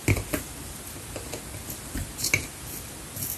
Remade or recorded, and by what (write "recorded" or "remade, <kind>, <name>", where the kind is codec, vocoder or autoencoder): recorded